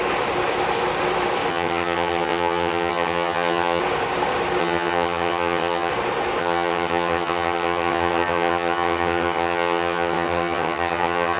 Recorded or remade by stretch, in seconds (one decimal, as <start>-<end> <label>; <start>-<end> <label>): 0.0-1.5 recorded; 1.5-3.8 remade; 3.8-4.6 recorded; 4.6-5.9 remade; 5.9-6.4 recorded; 6.4-11.4 remade